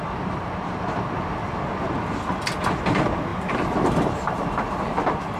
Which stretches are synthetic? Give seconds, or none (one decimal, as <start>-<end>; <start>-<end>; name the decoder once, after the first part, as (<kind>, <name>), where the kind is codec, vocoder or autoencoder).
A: 0.0-1.4 (vocoder, BigVGAN v2); 2.7-5.4